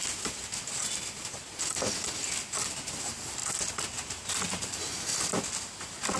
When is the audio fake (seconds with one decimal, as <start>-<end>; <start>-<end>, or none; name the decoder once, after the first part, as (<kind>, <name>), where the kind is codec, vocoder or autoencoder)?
none